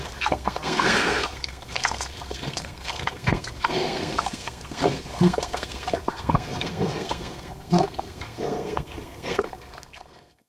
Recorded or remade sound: remade